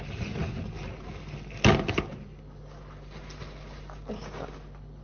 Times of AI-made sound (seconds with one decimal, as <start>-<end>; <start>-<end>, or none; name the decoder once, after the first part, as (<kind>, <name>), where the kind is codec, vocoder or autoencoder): none